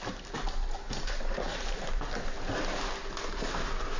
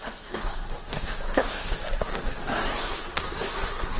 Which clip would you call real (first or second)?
first